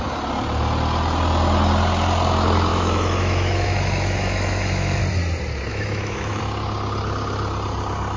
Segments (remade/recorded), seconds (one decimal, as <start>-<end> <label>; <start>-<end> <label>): 0.0-2.7 recorded; 2.7-5.0 remade; 5.0-5.7 recorded; 5.7-6.4 remade; 6.4-8.2 recorded

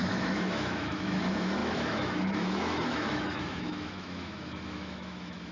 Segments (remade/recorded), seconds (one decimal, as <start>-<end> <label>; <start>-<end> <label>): 0.0-5.5 remade